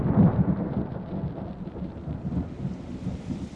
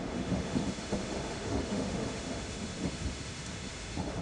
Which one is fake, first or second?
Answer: second